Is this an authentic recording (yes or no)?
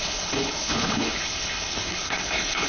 no